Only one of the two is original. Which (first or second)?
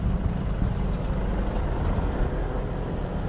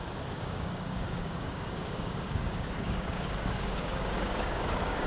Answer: first